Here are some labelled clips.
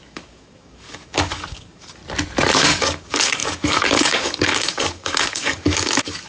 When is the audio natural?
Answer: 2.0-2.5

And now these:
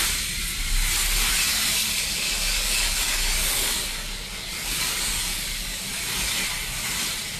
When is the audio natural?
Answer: 0.0-1.5; 5.9-7.4